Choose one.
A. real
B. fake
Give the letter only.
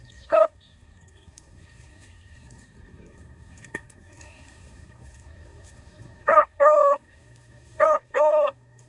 B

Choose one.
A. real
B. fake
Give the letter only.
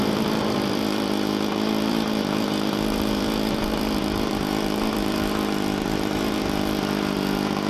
B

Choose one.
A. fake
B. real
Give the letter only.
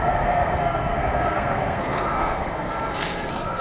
A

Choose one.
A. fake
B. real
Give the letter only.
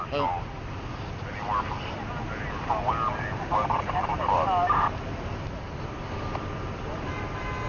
B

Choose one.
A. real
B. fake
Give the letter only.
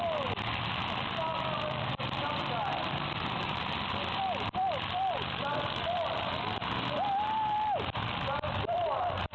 A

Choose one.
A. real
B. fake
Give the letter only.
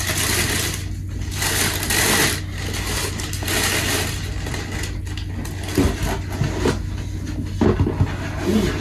A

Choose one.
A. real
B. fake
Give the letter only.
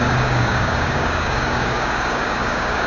B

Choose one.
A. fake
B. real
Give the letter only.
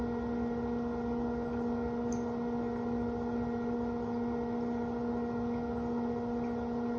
B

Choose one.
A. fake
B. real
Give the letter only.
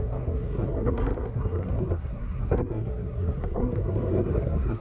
A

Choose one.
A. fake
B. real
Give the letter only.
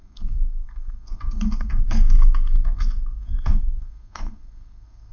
A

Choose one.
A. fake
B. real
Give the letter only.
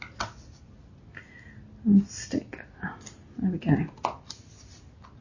B